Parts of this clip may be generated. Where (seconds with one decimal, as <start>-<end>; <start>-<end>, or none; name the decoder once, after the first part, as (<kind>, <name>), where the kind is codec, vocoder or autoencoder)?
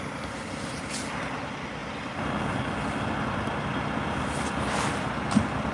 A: none